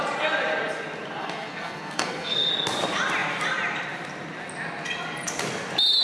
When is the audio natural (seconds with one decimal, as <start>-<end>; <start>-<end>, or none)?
0.0-1.2; 2.5-6.0